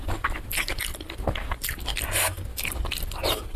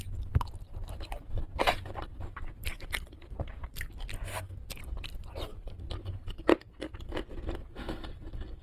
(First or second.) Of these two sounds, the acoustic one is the first